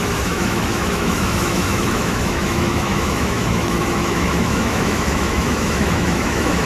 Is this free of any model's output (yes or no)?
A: no